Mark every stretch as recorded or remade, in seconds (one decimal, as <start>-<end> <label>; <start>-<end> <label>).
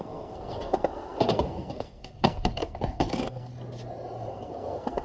0.0-3.5 remade; 3.5-4.3 recorded; 4.3-5.0 remade